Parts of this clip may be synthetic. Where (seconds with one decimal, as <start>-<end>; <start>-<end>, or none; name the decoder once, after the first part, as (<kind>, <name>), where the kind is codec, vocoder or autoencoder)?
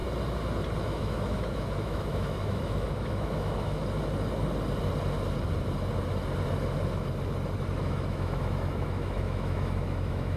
0.8-3.8 (autoencoder, DAC-VAE); 7.8-10.4